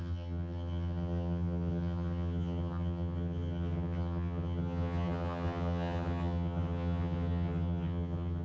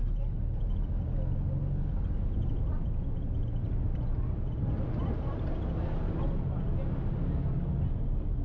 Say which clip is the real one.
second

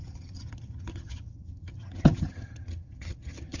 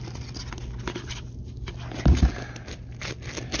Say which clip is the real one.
second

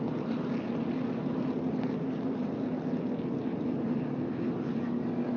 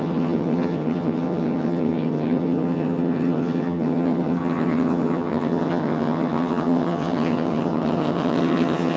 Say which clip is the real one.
first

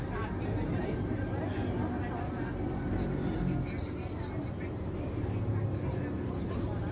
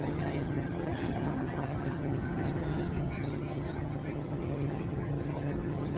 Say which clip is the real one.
first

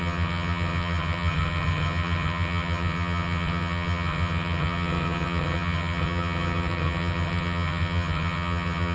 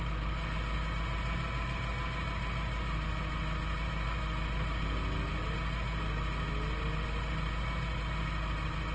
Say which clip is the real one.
second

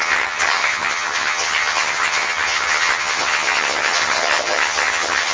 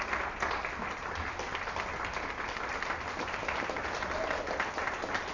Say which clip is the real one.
second